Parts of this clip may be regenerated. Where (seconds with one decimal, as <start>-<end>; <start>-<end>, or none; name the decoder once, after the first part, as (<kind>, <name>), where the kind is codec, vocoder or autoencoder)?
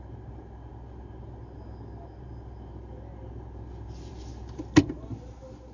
none